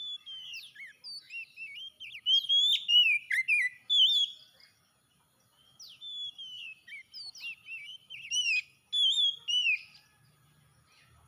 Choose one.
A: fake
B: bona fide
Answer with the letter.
B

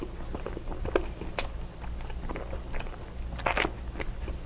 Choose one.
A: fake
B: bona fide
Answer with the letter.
B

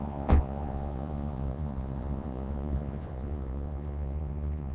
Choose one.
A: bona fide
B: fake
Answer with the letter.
B